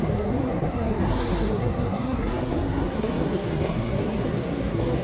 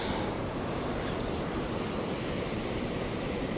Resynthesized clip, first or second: first